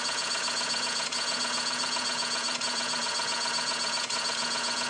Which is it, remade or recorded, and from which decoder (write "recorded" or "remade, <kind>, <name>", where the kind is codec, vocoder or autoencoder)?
remade, vocoder, Vocos